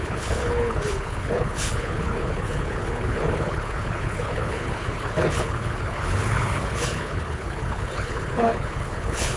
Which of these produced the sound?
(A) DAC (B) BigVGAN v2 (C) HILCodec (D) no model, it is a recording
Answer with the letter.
C